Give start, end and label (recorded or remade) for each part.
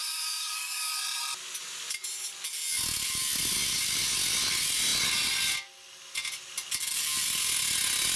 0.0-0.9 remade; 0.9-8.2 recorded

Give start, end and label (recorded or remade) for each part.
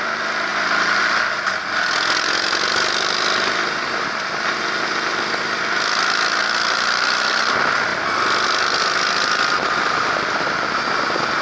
0.0-11.4 recorded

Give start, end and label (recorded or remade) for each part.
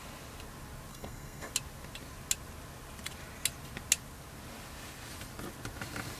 0.0-0.9 recorded; 0.9-1.5 remade; 1.5-6.2 recorded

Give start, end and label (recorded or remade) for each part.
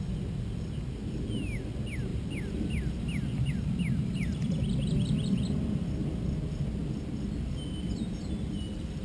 0.0-9.0 recorded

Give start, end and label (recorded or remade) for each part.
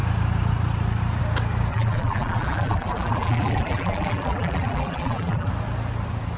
0.0-1.7 recorded; 1.7-5.5 remade; 5.5-6.4 recorded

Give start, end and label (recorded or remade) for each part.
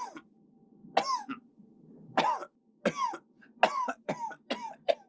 0.0-5.1 recorded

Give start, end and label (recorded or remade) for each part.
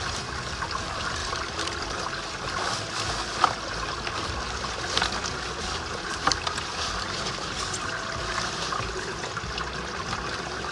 0.0-1.2 recorded; 1.2-2.0 remade; 2.0-10.7 recorded